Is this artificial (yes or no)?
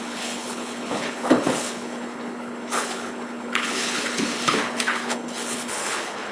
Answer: yes